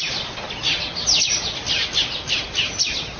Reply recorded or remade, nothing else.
recorded